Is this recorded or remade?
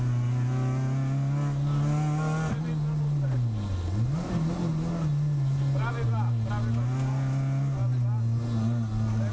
recorded